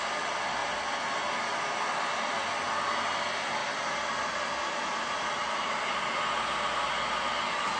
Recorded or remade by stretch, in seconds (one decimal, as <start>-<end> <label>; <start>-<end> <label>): 0.0-7.8 recorded